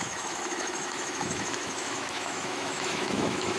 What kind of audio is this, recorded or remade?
remade